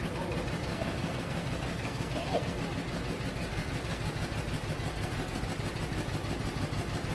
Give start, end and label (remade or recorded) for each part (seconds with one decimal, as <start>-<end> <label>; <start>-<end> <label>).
0.0-0.7 recorded; 0.7-2.6 remade; 2.6-3.5 recorded; 3.5-4.1 remade; 4.1-4.9 recorded; 4.9-5.4 remade; 5.4-7.1 recorded